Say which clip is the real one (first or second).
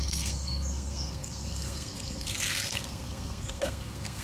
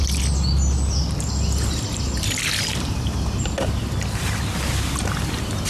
second